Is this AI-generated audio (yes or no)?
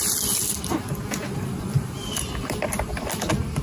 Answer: no